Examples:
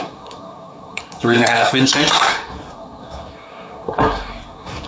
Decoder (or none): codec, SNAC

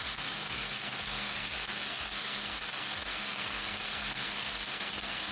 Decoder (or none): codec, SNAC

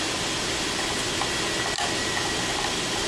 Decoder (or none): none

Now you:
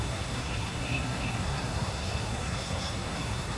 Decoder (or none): codec, SNAC